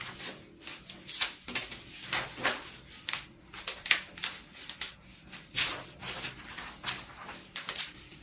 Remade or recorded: recorded